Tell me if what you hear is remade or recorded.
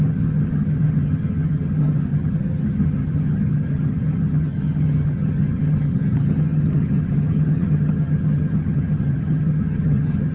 remade